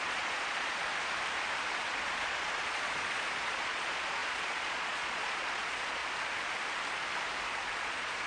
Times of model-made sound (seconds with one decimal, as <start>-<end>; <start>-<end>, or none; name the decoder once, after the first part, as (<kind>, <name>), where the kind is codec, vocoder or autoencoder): 0.0-0.9 (vocoder, Vocos); 1.9-6.0; 7.6-8.3